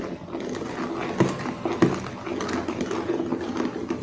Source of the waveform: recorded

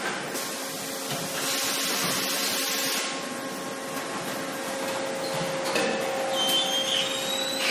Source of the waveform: recorded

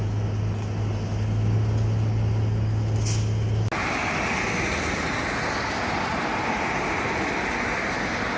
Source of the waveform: recorded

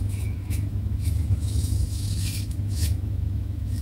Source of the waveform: remade